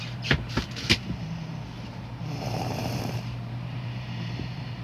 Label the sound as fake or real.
fake